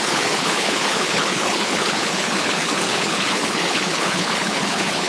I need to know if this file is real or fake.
fake